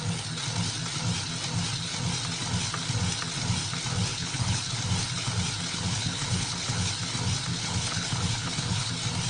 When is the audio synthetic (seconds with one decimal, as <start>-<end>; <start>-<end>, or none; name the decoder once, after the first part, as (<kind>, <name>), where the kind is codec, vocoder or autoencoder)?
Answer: 4.1-4.7 (codec, HILCodec); 5.7-6.9; 7.5-8.9